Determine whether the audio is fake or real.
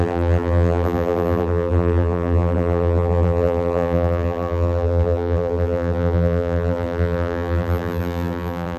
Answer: fake